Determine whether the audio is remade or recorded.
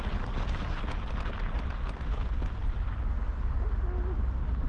recorded